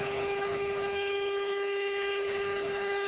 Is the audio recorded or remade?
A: remade